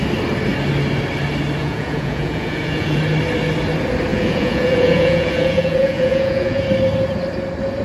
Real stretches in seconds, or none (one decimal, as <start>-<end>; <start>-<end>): 0.0-1.6; 3.0-4.1; 6.6-7.8

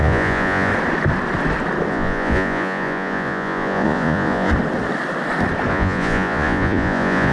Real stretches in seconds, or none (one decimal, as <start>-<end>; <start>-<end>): 0.7-1.9; 4.5-5.7

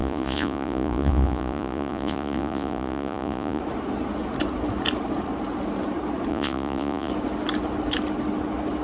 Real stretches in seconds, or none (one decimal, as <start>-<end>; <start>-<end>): 3.6-6.3; 7.1-8.8